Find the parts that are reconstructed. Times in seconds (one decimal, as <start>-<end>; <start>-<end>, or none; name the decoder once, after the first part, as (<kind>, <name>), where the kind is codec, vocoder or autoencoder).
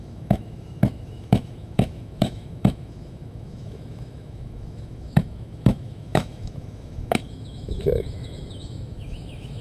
0.0-9.6 (autoencoder, DAC-VAE)